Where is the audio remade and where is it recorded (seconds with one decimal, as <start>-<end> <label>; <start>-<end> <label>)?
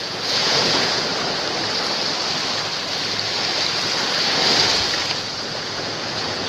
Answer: 0.0-1.1 remade; 1.1-5.0 recorded; 5.0-6.5 remade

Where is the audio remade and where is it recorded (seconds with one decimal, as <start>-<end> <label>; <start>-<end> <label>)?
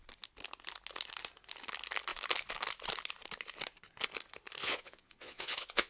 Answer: 0.0-4.6 recorded; 4.6-5.9 remade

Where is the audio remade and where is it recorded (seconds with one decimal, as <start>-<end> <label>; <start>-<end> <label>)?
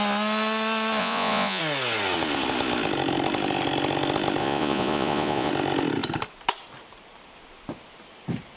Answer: 0.0-1.0 recorded; 1.0-1.6 remade; 1.6-4.4 recorded; 4.4-5.5 remade; 5.5-8.6 recorded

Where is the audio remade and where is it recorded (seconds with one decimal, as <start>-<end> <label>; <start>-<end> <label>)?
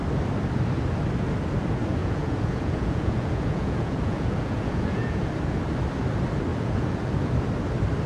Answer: 0.0-2.0 recorded; 2.0-5.3 remade; 5.3-6.5 recorded; 6.5-7.3 remade; 7.3-8.1 recorded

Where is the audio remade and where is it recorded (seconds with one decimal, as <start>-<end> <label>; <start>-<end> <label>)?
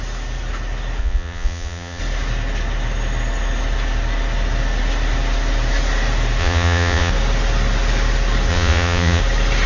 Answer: 0.0-1.0 recorded; 1.0-2.0 remade; 2.0-6.4 recorded; 6.4-7.1 remade; 7.1-8.5 recorded; 8.5-9.2 remade; 9.2-9.7 recorded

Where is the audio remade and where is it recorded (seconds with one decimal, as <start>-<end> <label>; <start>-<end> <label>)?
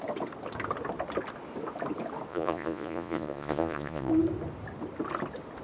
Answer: 0.0-2.3 recorded; 2.3-4.1 remade; 4.1-5.6 recorded